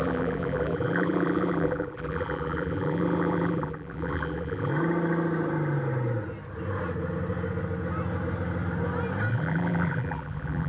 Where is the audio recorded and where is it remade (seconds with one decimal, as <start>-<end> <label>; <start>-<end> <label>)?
0.0-4.7 remade; 4.7-9.3 recorded; 9.3-10.7 remade